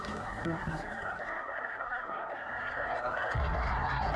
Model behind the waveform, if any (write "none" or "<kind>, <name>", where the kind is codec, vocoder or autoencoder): codec, SNAC